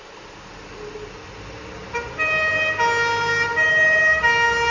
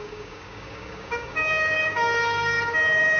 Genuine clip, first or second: first